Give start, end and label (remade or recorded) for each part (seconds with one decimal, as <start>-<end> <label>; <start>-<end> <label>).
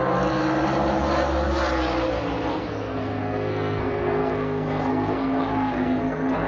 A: 0.0-2.5 recorded; 2.5-6.5 remade